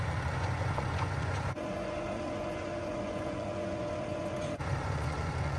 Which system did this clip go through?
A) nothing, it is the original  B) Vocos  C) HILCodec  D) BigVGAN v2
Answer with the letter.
B